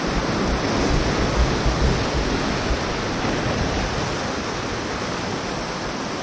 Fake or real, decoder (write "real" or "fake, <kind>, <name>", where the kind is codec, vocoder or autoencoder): real